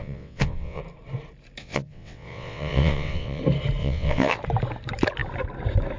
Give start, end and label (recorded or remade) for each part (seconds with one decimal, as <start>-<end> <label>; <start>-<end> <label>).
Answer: 0.0-0.8 remade; 0.8-1.6 recorded; 1.6-3.4 remade; 3.4-3.8 recorded; 3.8-4.4 remade; 4.4-6.0 recorded